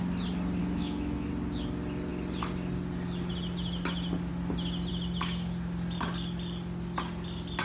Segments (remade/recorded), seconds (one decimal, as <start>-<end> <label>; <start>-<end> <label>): 0.0-0.6 recorded; 0.6-1.3 remade; 1.3-7.6 recorded